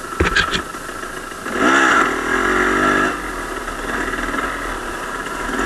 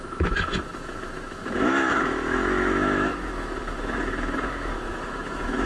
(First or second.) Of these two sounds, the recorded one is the first